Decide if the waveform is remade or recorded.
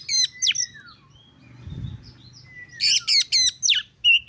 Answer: recorded